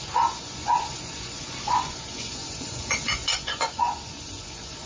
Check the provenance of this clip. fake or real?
fake